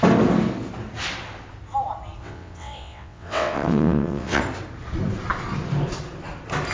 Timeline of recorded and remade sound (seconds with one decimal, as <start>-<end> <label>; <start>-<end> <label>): 0.0-2.2 recorded; 2.2-4.4 remade; 4.4-6.7 recorded